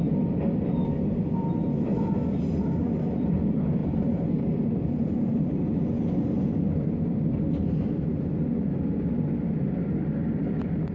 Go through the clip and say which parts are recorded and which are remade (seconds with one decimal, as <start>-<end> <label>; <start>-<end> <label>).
0.0-10.9 remade